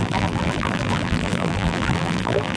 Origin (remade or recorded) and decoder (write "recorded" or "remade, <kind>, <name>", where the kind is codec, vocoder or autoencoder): remade, vocoder, BigVGAN v2